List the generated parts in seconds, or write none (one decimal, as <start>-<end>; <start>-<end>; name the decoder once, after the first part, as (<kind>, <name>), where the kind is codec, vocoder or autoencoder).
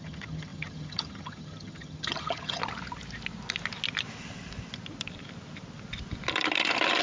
0.0-2.6 (vocoder, HiFi-GAN)